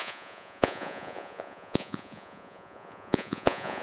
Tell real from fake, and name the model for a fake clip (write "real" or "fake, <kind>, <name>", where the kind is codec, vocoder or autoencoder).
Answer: fake, vocoder, Vocos